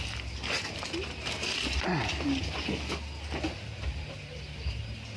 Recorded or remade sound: recorded